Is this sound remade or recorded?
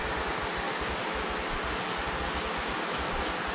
recorded